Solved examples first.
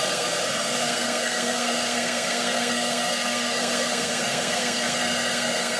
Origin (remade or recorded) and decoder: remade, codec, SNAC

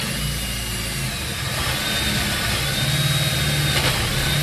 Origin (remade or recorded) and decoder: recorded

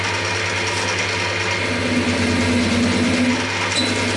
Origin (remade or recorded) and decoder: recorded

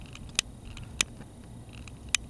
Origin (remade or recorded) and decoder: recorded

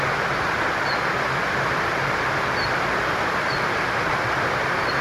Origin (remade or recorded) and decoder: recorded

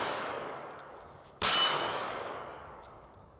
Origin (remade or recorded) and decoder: remade, codec, DAC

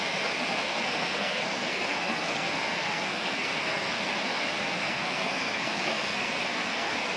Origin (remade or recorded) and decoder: remade, codec, SNAC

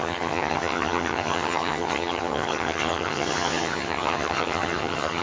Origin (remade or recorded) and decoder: remade, vocoder, HiFi-GAN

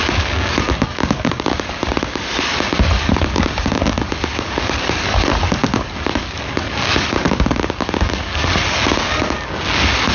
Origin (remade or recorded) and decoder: remade, codec, DAC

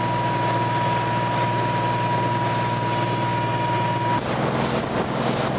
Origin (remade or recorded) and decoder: recorded